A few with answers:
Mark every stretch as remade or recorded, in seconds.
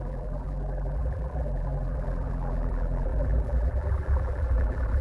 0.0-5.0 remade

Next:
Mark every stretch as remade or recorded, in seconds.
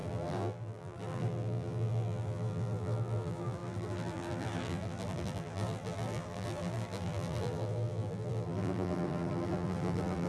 0.0-10.3 remade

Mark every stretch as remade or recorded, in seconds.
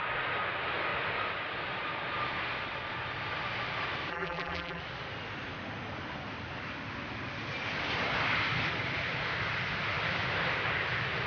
0.0-4.1 recorded; 4.1-4.8 remade; 4.8-11.3 recorded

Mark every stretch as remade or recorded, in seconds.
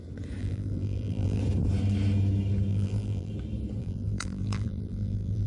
0.0-0.4 recorded; 0.4-1.4 remade; 1.4-2.7 recorded; 2.7-3.3 remade; 3.3-3.8 recorded; 3.8-5.5 remade